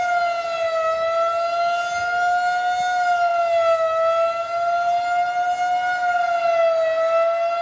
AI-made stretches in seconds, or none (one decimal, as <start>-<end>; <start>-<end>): none